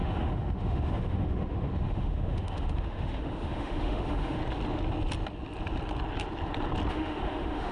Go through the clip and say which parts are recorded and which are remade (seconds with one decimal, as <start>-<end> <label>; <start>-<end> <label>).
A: 0.0-4.4 remade; 4.4-6.9 recorded; 6.9-7.7 remade